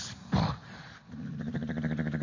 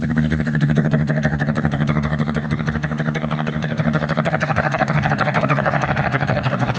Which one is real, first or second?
first